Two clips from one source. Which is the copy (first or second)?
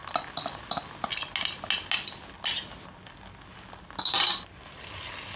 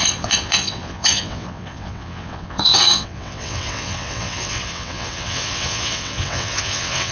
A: second